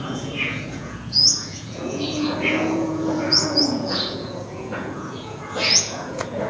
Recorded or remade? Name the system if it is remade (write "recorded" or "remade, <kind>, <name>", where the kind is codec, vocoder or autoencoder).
remade, vocoder, Vocos